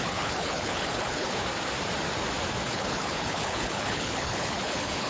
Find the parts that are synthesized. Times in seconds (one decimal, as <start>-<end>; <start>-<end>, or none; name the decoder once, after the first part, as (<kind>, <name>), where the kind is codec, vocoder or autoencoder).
0.0-1.4 (codec, HILCodec); 2.7-5.1